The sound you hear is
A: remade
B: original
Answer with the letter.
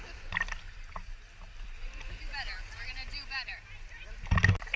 B